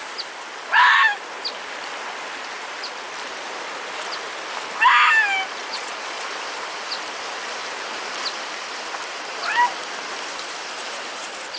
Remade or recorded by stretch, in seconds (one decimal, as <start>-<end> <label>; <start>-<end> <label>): 0.0-5.6 recorded; 5.6-6.3 remade; 6.3-11.6 recorded